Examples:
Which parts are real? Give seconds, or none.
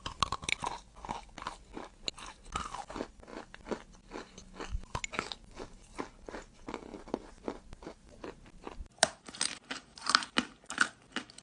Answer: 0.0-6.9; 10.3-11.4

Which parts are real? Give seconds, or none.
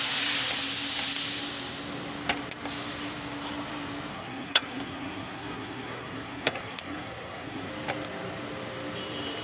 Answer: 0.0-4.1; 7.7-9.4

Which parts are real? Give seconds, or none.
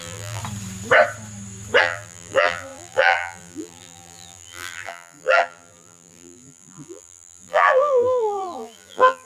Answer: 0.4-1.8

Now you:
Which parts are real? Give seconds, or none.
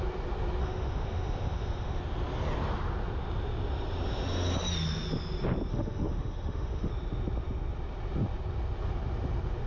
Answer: 0.0-0.6; 2.0-5.7; 6.9-9.7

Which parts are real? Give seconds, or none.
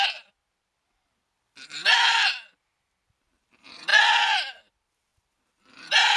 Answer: 1.8-3.0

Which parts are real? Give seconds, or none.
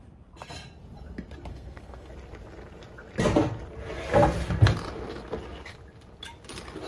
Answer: 0.0-1.5; 2.1-6.9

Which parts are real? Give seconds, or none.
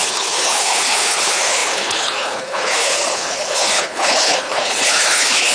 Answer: none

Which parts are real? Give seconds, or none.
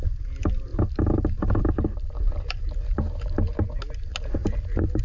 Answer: 0.0-0.7; 3.7-4.4